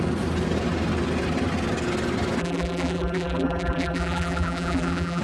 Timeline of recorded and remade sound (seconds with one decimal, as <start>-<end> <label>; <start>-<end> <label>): 0.0-2.4 recorded; 2.4-5.2 remade